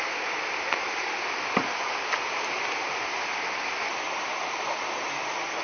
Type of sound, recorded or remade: recorded